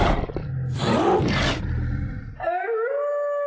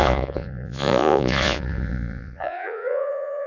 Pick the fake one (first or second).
second